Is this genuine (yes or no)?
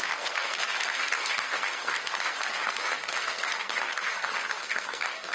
no